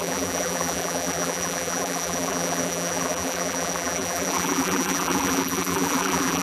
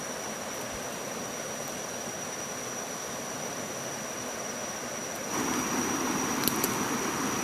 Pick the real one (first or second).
second